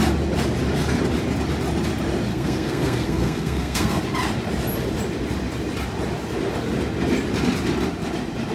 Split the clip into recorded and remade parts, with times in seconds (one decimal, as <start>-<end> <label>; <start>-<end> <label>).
0.0-2.3 recorded; 2.3-4.0 remade; 4.0-8.5 recorded